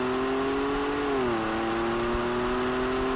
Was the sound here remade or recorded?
recorded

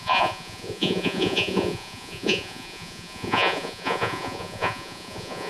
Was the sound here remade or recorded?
remade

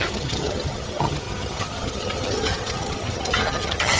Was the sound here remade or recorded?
remade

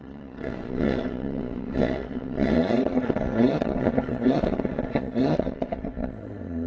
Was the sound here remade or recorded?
remade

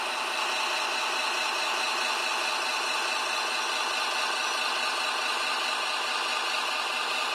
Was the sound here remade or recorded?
recorded